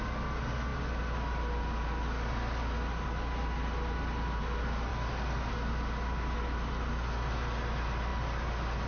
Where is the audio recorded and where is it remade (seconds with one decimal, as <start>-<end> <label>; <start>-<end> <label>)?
0.0-8.9 recorded